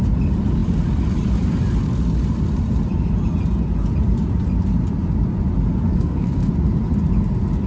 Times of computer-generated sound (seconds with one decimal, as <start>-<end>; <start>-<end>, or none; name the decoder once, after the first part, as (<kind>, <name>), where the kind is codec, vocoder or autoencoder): 5.9-6.5 (codec, SNAC)